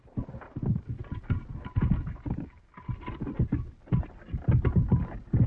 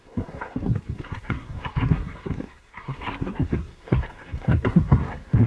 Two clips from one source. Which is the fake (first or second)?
second